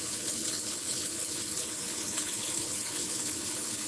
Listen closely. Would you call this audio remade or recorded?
remade